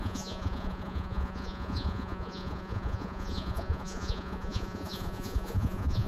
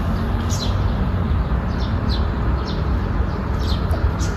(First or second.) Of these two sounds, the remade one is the first